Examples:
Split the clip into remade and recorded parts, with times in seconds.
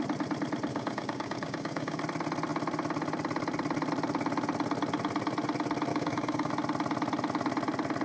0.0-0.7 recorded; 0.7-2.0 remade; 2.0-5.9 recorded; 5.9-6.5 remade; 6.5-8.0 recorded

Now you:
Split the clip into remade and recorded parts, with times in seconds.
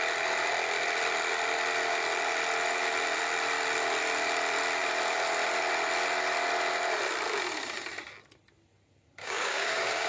0.0-9.2 recorded; 9.2-10.1 remade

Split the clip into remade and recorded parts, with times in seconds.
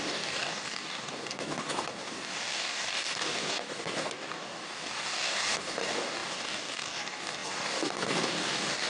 0.0-8.9 remade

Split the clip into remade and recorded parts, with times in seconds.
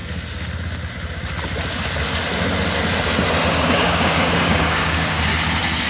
0.0-3.5 recorded; 3.5-5.3 remade; 5.3-5.9 recorded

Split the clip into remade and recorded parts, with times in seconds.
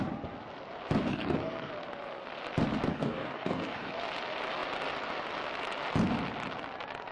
0.0-1.1 recorded; 1.1-1.7 remade; 1.7-2.9 recorded; 2.9-3.9 remade; 3.9-7.1 recorded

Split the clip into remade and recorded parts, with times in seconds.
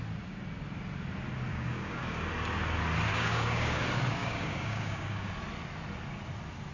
0.0-1.5 recorded; 1.5-2.3 remade; 2.3-3.1 recorded; 3.1-3.8 remade; 3.8-4.2 recorded; 4.2-5.3 remade; 5.3-6.7 recorded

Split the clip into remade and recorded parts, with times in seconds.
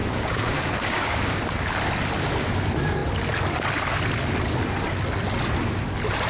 0.0-1.4 remade; 1.4-6.3 recorded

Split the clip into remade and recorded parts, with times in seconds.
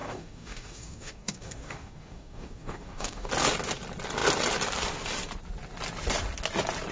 0.0-3.3 remade; 3.3-6.9 recorded